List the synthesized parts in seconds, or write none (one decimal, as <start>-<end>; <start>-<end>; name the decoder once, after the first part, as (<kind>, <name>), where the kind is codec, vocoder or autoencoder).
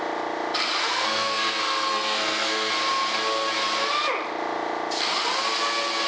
0.8-2.7 (codec, SNAC)